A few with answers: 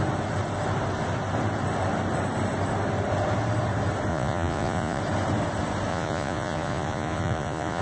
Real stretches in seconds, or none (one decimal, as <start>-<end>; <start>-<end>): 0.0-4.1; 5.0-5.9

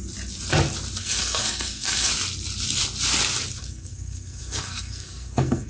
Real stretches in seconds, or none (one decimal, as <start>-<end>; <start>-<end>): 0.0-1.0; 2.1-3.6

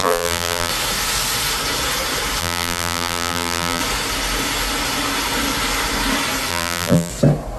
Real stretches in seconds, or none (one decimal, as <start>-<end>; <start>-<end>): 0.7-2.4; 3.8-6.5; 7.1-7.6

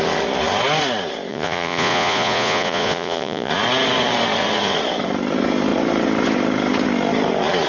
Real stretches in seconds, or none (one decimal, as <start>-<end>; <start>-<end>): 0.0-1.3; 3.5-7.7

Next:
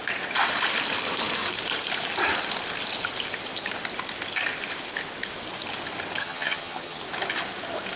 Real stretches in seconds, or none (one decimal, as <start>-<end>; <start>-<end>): 0.0-6.2; 7.0-8.0

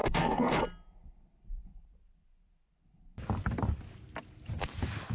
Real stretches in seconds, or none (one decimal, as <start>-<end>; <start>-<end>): 0.6-5.1